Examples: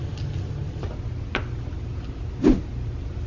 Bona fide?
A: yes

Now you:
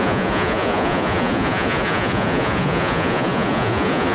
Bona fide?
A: no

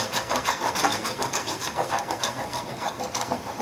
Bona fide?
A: no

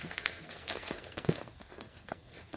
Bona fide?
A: no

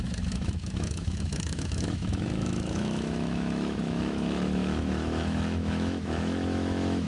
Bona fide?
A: no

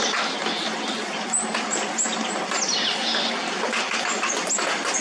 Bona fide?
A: yes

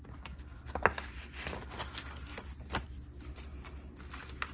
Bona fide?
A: yes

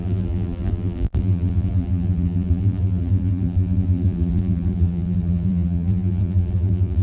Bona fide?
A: no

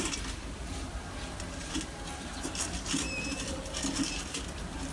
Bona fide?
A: yes